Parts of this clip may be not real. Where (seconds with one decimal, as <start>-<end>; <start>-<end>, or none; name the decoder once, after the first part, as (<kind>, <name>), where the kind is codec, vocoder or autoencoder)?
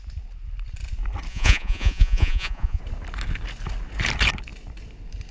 1.3-2.8 (vocoder, Vocos)